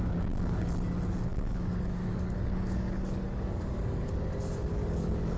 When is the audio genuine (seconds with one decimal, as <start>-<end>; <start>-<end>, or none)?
0.7-1.3; 4.1-4.8